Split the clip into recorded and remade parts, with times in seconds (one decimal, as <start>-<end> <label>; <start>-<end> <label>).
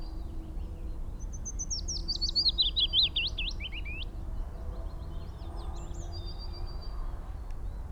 0.0-7.9 recorded